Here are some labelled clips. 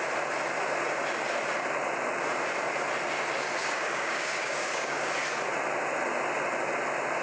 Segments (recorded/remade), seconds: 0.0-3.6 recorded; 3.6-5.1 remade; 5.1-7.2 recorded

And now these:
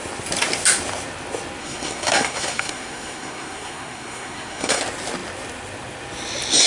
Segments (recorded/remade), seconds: 0.0-1.6 recorded; 1.6-4.8 remade; 4.8-6.7 recorded

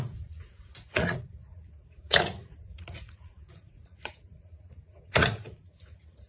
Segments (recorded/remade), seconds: 0.0-6.3 remade